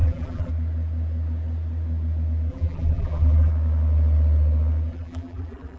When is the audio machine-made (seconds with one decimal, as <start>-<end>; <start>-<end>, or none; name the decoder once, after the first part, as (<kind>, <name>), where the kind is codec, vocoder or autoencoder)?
0.0-0.5 (vocoder, BigVGAN v2); 2.5-3.5; 4.9-5.8